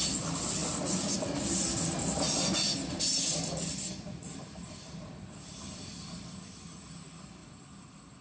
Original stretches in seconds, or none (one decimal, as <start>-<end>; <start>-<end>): 0.0-7.4